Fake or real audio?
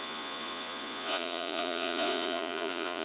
fake